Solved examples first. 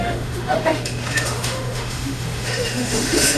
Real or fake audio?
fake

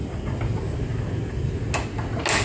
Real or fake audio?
real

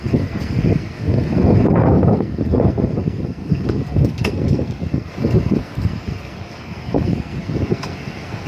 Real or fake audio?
fake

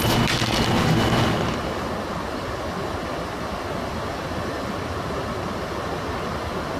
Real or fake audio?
real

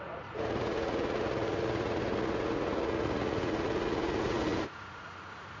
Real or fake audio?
fake